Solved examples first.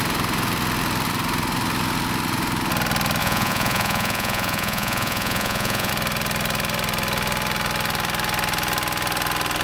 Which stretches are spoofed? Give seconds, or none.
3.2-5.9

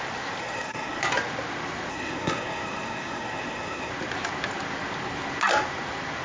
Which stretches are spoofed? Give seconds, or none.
0.4-1.0; 1.9-3.9

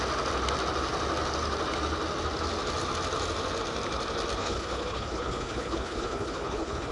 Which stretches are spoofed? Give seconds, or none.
4.4-6.9

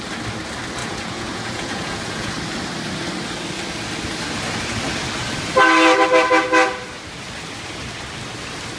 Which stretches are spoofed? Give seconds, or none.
0.8-2.3

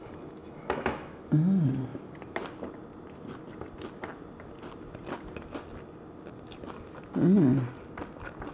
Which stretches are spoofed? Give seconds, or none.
0.4-1.3

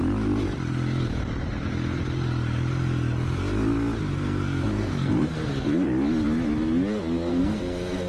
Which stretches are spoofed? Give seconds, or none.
4.1-5.5; 7.3-8.1

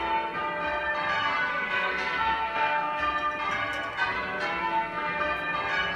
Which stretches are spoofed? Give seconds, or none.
1.5-3.0; 4.6-5.2

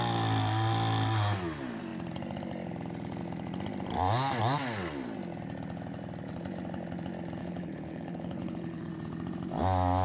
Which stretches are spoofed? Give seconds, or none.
7.4-8.9